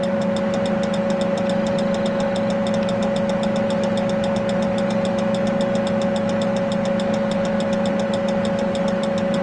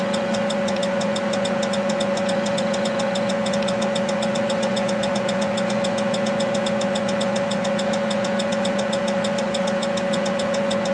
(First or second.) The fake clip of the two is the second